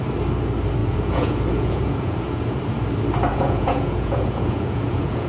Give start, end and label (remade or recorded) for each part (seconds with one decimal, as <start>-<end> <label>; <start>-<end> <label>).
0.0-0.8 recorded; 0.8-2.6 remade; 2.6-3.3 recorded; 3.3-5.3 remade